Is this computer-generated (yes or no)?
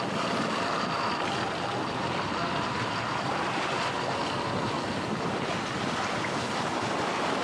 yes